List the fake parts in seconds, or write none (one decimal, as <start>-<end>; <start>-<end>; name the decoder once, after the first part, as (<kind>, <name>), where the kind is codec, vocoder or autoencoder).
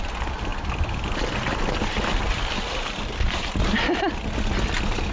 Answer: 0.5-3.6 (vocoder, BigVGAN v2)